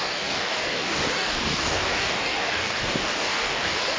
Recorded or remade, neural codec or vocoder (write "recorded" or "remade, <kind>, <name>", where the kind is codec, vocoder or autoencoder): remade, codec, DAC